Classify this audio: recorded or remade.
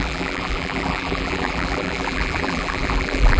remade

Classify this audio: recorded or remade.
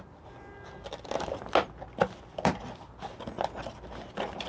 recorded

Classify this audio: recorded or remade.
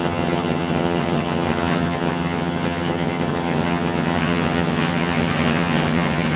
remade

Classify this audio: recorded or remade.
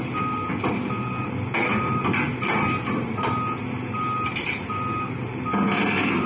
recorded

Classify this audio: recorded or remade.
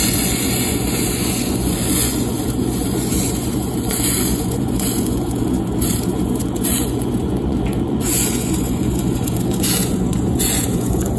remade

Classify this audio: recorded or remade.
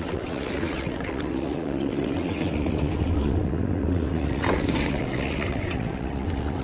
remade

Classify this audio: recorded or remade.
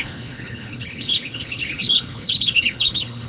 remade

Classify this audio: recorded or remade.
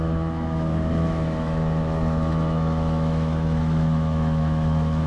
remade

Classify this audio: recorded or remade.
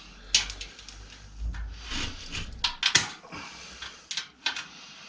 recorded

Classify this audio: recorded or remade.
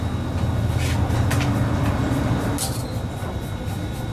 recorded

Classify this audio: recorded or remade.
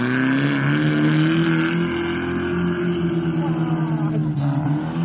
recorded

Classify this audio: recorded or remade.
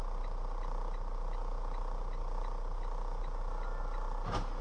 recorded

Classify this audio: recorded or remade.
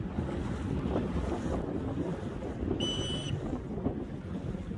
recorded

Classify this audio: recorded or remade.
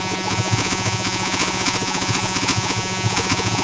remade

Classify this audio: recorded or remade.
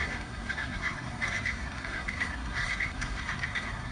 remade